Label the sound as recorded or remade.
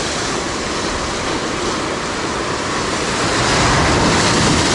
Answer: recorded